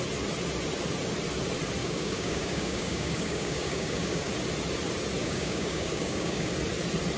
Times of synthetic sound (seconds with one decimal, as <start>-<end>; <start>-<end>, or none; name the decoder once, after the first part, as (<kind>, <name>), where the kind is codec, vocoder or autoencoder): 1.8-4.3 (codec, DAC); 5.2-6.5